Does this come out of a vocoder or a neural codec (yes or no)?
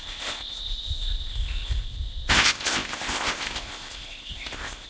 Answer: yes